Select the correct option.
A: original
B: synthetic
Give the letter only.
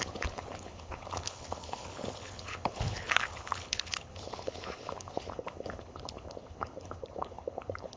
B